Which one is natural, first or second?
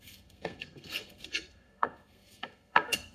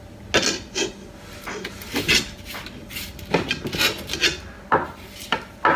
second